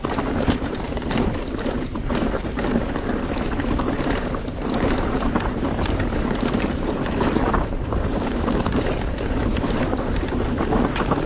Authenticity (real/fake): fake